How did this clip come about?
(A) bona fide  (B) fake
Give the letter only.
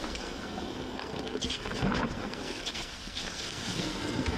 B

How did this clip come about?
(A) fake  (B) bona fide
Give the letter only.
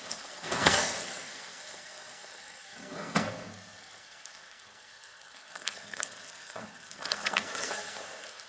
A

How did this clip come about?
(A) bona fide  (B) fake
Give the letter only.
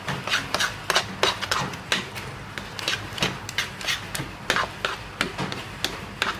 A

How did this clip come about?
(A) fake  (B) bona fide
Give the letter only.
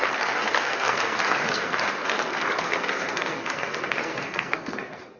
A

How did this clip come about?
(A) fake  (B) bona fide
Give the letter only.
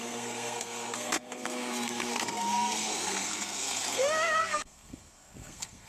A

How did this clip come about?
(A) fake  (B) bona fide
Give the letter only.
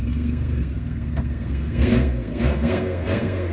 A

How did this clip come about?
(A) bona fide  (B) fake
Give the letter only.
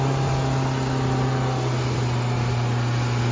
A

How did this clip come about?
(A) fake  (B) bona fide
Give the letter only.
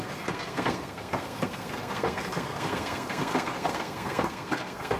A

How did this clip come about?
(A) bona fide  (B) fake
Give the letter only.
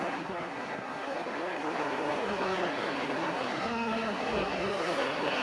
B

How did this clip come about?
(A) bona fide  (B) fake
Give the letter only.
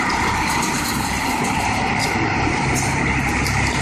A